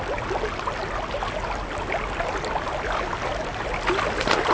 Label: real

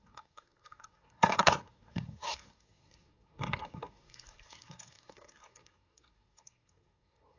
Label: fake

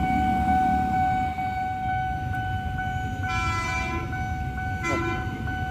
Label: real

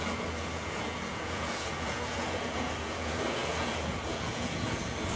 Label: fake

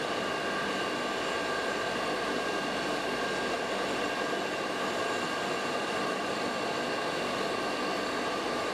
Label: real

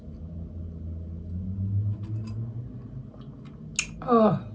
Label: real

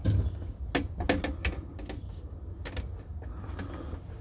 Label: real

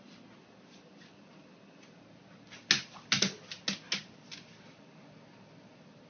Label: real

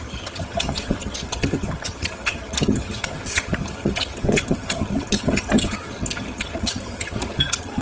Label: fake